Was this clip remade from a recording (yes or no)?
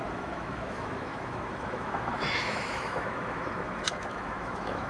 yes